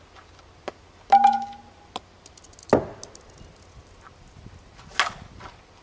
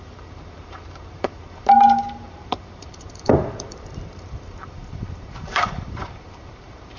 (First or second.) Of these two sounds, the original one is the first